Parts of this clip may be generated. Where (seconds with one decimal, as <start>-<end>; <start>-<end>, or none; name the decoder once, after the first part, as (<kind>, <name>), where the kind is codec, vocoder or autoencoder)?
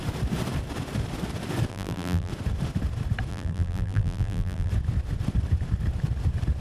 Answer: 1.7-2.3 (vocoder, BigVGAN v2); 3.3-4.7